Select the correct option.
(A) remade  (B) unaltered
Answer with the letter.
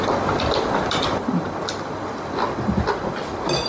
B